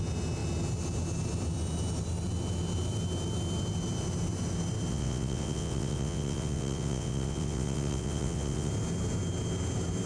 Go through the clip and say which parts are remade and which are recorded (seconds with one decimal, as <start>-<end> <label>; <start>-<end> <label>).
0.0-4.9 recorded; 4.9-8.7 remade; 8.7-10.1 recorded